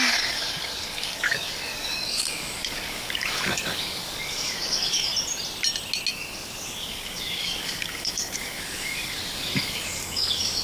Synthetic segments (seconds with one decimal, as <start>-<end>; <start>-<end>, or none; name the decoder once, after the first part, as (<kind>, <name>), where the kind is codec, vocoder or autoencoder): 0.0-5.1 (codec, DAC); 6.1-10.6